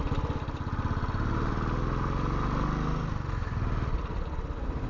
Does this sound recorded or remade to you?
recorded